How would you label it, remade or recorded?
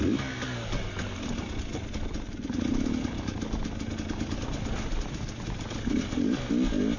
recorded